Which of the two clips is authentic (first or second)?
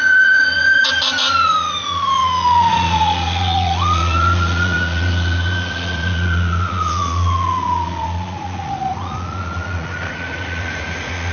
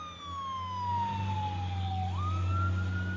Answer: second